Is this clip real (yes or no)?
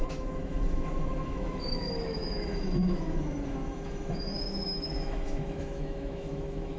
no